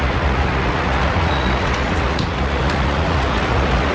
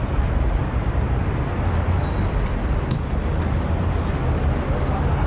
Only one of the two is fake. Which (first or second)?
first